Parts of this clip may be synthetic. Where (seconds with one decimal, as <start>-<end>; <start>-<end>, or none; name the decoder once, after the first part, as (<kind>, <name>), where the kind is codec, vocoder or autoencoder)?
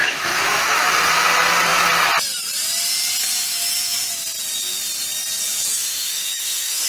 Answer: 0.0-0.9 (autoencoder, DAC-VAE); 5.7-6.9